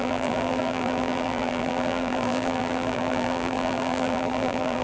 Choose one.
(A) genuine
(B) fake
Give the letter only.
B